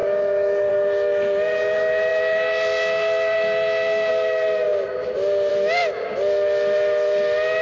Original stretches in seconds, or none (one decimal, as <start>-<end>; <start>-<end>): 0.0-7.6